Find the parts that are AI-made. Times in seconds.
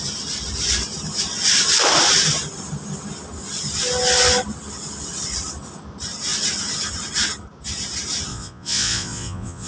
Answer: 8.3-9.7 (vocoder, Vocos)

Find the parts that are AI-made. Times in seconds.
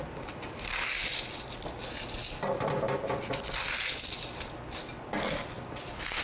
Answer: none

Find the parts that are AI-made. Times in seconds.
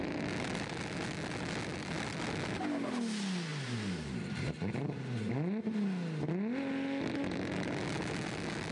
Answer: 3.5-5.3 (vocoder, BigVGAN v2)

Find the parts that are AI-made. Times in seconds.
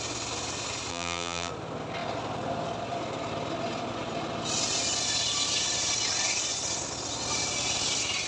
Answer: 0.9-1.5 (vocoder, BigVGAN v2)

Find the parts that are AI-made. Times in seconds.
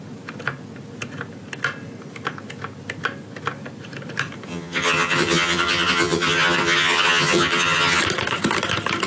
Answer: 4.5-8.0 (vocoder, HiFi-GAN)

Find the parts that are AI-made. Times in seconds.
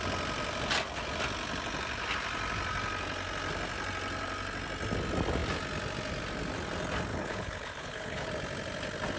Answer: 7.1-8.3 (codec, HILCodec)